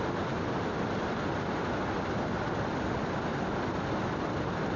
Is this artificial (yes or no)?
no